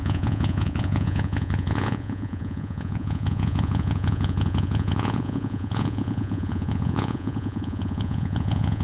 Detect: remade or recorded remade